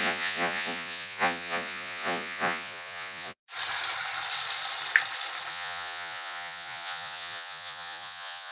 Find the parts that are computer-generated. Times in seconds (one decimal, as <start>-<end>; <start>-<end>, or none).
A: 0.0-3.4; 5.5-8.5